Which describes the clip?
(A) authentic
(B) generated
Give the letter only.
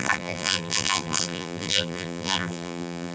B